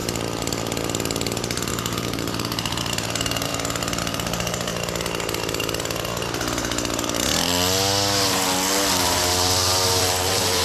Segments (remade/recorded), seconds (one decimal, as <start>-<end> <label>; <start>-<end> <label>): 0.0-1.7 recorded; 1.7-3.5 remade; 3.5-4.1 recorded; 4.1-4.7 remade; 4.7-9.0 recorded; 9.0-10.6 remade